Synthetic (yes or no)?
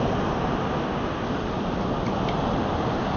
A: no